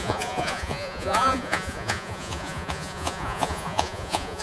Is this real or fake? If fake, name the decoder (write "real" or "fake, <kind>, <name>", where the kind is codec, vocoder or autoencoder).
fake, vocoder, Vocos